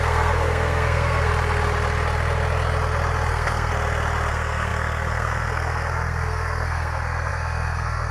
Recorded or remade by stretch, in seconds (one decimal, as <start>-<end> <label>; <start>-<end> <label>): 0.0-1.3 remade; 1.3-3.3 recorded; 3.3-3.7 remade; 3.7-4.3 recorded; 4.3-8.1 remade